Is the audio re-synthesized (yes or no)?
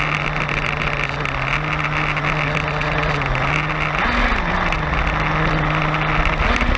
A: no